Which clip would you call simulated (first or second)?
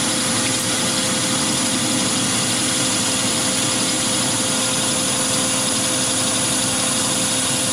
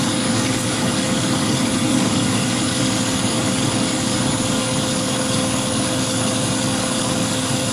second